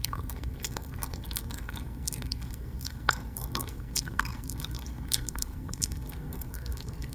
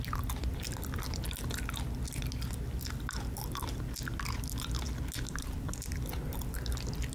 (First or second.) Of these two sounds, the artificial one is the first